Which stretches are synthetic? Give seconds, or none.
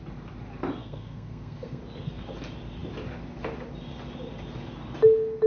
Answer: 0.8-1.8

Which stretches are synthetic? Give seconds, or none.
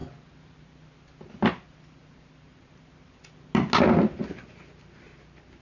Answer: none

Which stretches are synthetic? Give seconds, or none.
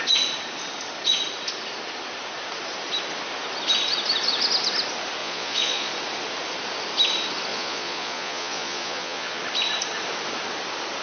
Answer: 5.2-5.9; 7.5-9.4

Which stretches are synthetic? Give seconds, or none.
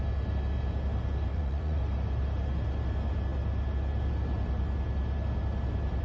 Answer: 1.3-1.8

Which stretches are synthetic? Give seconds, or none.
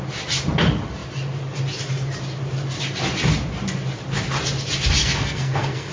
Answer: 5.0-5.9